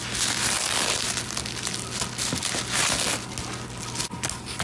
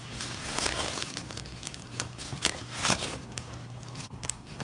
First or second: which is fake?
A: second